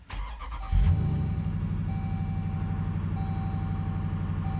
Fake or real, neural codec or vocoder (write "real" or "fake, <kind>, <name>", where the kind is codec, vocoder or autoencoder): real